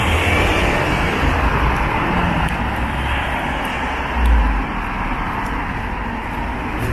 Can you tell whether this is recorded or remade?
recorded